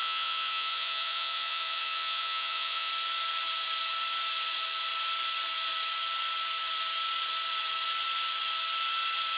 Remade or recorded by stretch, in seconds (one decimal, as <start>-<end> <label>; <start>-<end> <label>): 0.0-2.9 remade; 2.9-9.4 recorded